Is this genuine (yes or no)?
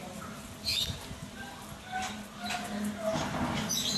yes